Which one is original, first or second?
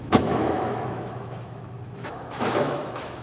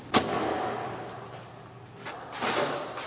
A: second